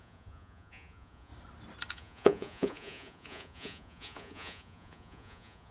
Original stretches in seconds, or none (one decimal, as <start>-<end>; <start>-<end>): 1.3-1.9